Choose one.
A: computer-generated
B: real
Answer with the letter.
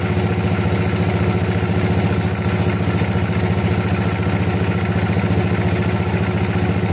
B